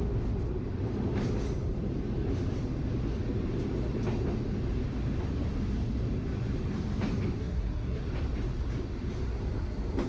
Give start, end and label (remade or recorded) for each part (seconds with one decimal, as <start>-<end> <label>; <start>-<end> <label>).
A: 0.0-7.4 recorded; 7.4-8.0 remade; 8.0-10.1 recorded